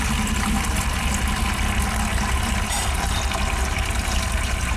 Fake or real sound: real